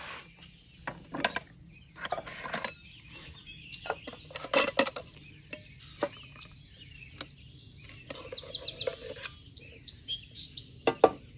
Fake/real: real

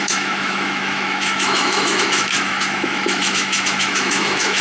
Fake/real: fake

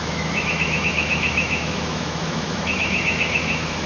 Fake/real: fake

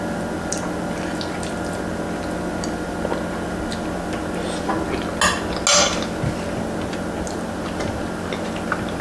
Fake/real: real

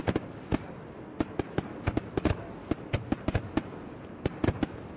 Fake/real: real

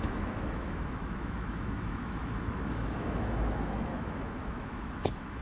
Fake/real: fake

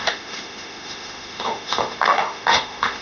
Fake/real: fake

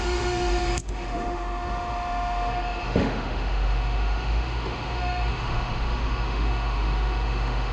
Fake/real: fake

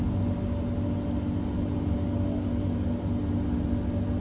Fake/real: real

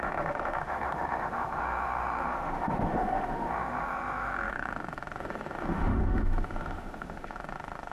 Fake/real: fake